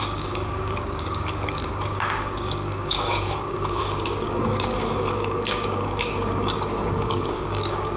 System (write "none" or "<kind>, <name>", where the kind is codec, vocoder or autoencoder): codec, DAC